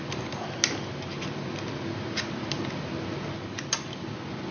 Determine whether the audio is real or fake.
real